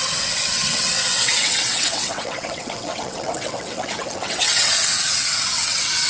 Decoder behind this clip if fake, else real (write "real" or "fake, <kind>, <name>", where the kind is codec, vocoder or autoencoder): fake, vocoder, WaveNeXt